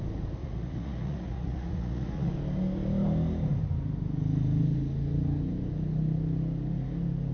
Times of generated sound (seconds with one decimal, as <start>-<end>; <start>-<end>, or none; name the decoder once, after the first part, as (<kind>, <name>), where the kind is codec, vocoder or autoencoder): 0.4-2.3 (vocoder, Vocos)